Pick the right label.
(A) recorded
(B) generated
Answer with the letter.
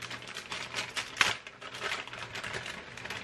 A